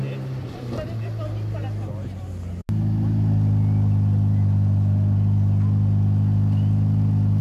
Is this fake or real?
real